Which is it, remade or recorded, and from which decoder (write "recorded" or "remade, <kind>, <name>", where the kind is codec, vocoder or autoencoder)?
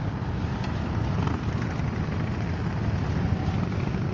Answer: recorded